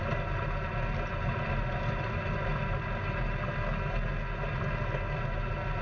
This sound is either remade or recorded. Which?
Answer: recorded